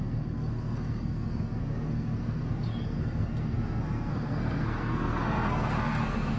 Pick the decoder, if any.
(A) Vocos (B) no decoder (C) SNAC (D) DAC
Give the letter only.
C